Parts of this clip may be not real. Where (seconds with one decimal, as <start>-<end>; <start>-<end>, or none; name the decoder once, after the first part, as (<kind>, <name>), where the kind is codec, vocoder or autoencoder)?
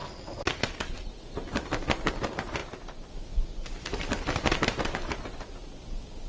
none